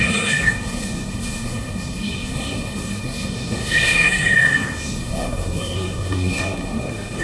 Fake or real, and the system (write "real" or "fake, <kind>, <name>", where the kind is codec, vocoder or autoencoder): fake, codec, SNAC